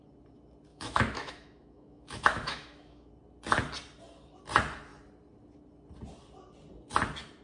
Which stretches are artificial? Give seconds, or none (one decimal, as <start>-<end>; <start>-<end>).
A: 0.7-3.1